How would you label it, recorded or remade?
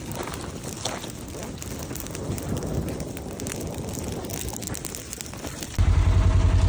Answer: recorded